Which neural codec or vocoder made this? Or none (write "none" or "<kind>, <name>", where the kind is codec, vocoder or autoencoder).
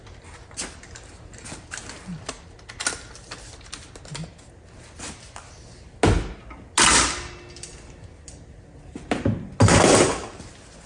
none